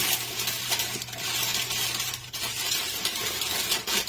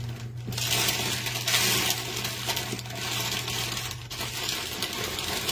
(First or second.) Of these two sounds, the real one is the second